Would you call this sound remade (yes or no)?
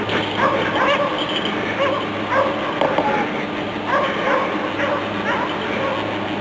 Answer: no